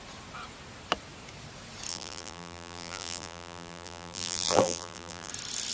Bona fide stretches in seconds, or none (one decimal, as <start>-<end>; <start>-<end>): 0.0-1.9; 5.3-5.7